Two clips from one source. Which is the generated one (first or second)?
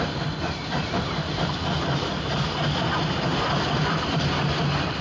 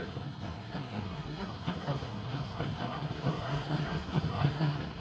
second